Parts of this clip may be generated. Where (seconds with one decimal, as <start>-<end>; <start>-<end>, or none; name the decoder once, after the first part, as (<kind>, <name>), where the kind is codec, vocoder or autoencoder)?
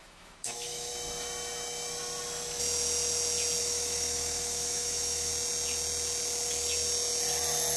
0.0-0.9 (autoencoder, DAC-VAE); 3.6-5.3